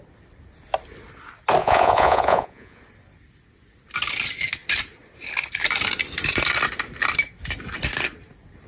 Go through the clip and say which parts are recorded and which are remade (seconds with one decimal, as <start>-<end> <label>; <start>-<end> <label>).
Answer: 0.0-1.6 recorded; 1.6-2.8 remade; 2.8-8.7 recorded